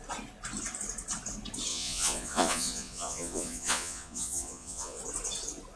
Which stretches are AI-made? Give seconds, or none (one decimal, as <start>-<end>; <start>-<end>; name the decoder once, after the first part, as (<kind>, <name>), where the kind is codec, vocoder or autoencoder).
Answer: 1.7-5.0 (vocoder, Vocos)